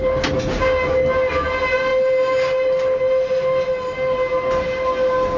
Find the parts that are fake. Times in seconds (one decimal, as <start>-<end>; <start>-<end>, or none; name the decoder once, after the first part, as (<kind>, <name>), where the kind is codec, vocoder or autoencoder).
none